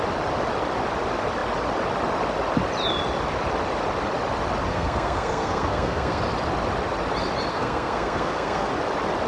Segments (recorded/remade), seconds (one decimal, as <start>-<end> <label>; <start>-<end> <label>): 0.0-4.7 recorded; 4.7-6.2 remade; 6.2-7.5 recorded; 7.5-8.7 remade; 8.7-9.3 recorded

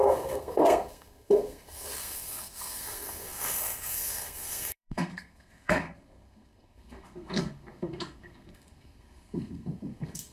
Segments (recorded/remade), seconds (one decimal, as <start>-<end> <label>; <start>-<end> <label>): 0.0-10.3 remade

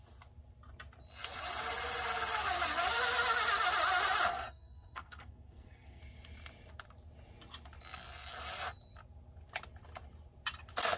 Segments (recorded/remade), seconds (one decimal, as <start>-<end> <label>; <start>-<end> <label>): 0.0-4.3 recorded; 4.3-6.0 remade; 6.0-11.0 recorded